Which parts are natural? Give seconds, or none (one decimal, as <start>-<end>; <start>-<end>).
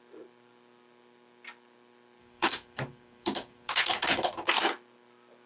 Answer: 0.0-2.2; 4.5-5.5